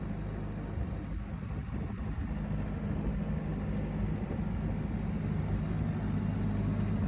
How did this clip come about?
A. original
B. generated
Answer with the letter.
A